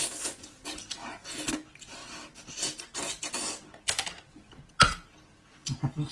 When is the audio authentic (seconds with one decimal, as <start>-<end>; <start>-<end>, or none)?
0.0-6.1